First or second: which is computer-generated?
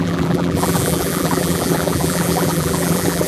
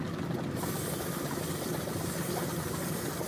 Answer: first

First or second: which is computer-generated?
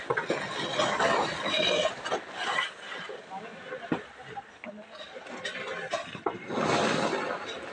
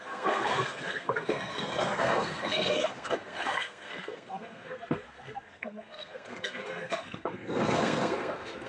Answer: second